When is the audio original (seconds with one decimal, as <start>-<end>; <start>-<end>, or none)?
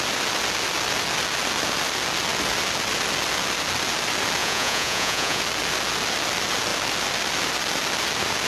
0.0-4.4; 5.4-8.5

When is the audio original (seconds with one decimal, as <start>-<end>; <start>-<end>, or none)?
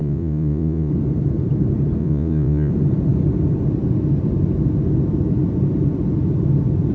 0.9-2.0; 2.7-6.9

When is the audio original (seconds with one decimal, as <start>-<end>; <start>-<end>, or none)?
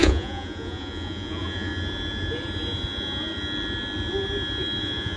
1.7-4.8